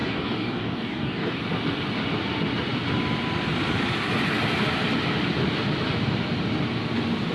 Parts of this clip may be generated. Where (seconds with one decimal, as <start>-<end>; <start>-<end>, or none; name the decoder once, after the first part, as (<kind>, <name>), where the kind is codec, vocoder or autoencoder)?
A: 0.0-1.4 (codec, DAC)